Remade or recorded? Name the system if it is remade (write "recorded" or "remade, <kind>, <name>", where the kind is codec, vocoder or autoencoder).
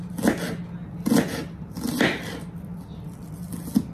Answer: recorded